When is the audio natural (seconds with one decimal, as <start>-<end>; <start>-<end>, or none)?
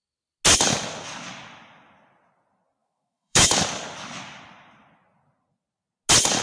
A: 0.0-2.8; 3.6-6.4